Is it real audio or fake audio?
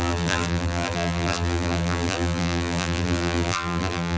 fake